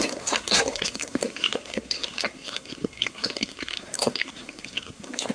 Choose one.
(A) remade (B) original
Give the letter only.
A